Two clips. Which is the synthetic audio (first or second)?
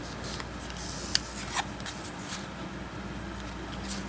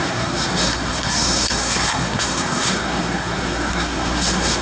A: second